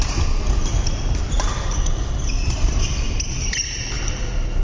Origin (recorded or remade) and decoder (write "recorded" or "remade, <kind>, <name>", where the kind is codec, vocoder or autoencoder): recorded